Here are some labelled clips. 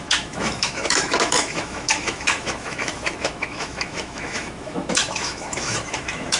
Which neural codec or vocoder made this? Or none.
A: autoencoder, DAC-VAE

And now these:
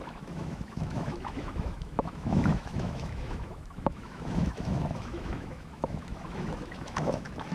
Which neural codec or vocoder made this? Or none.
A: autoencoder, DAC-VAE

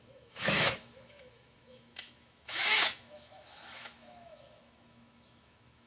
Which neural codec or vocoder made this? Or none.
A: autoencoder, DAC-VAE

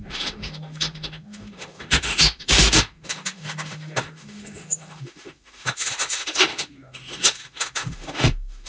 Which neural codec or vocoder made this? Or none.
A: autoencoder, DAC-VAE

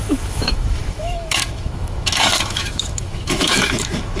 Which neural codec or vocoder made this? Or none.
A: autoencoder, DAC-VAE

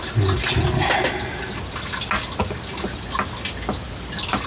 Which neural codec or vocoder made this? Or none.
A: none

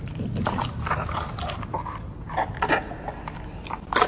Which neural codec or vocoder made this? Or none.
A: none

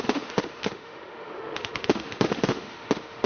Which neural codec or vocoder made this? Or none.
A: autoencoder, DAC-VAE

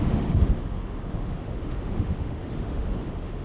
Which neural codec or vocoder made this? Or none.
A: autoencoder, DAC-VAE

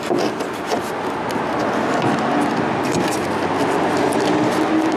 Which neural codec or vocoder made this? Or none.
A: none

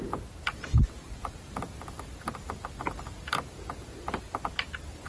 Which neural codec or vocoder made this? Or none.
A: none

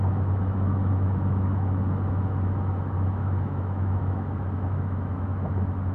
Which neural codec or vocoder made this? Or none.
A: autoencoder, DAC-VAE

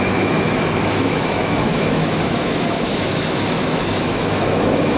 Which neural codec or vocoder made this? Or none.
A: autoencoder, DAC-VAE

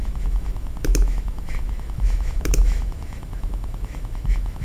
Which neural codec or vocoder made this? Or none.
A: autoencoder, DAC-VAE